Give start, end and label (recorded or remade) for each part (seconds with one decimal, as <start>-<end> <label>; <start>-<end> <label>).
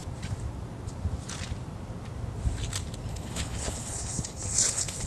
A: 0.0-3.1 recorded; 3.1-5.1 remade